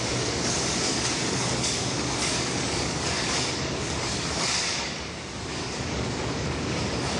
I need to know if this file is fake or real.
fake